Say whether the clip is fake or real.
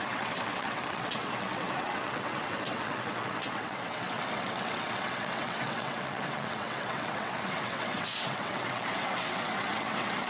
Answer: fake